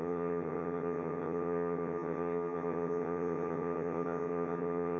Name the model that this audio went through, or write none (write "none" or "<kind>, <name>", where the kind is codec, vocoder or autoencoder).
vocoder, HiFi-GAN